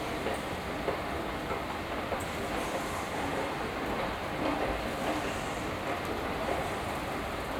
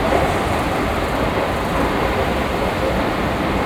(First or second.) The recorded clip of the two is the first